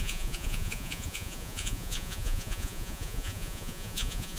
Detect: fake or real fake